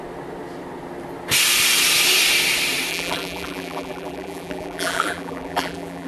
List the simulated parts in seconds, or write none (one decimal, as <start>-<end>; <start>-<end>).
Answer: 2.9-6.1